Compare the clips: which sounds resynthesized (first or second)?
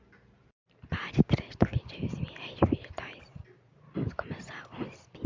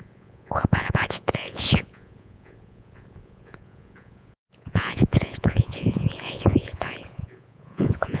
second